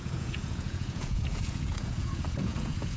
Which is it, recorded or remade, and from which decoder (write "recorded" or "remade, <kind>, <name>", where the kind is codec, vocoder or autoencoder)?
remade, vocoder, Vocos